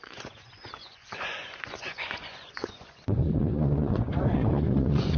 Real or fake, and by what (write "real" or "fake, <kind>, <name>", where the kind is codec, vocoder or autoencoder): fake, vocoder, Vocos